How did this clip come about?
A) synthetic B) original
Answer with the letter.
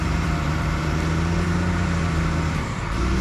A